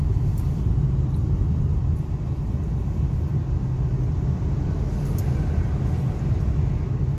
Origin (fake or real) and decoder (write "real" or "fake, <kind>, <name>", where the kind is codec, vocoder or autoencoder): real